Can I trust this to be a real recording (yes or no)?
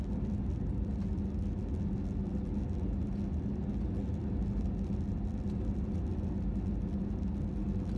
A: yes